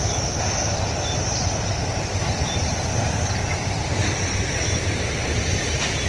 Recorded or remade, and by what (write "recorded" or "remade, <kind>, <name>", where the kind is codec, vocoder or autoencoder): remade, vocoder, BigVGAN v2